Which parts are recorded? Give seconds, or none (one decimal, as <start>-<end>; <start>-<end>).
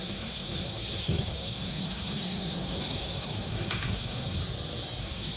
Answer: 4.4-5.0